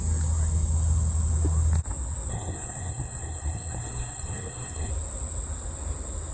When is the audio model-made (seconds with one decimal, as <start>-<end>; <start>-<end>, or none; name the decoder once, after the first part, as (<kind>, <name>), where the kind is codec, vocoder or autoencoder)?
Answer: 2.3-4.9 (codec, SNAC)